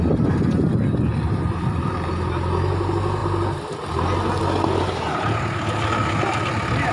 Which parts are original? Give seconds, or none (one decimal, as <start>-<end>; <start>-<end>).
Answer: 0.0-6.9